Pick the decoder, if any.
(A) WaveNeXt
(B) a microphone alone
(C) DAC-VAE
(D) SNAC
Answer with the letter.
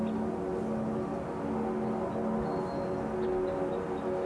B